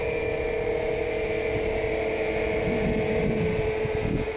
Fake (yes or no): no